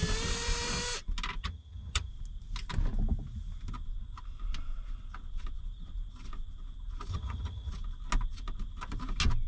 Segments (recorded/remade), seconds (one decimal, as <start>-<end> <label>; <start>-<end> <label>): 0.0-1.4 recorded; 1.4-2.1 remade; 2.1-7.1 recorded; 7.1-7.7 remade; 7.7-9.5 recorded